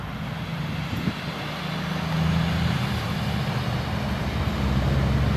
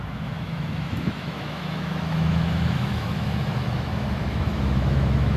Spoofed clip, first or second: second